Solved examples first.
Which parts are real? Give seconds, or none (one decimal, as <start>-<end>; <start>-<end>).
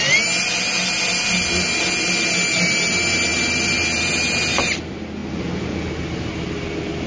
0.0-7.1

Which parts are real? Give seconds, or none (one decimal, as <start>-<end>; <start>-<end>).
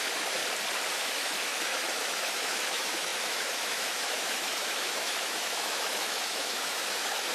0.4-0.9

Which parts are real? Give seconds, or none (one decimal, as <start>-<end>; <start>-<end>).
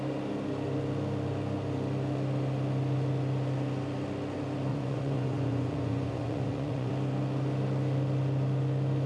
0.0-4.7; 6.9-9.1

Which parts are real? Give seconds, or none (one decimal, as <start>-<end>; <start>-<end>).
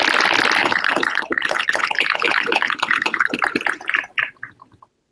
0.0-0.6; 3.4-5.1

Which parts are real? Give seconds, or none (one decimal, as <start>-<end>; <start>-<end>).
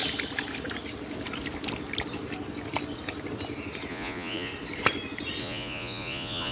0.0-3.9; 4.5-5.4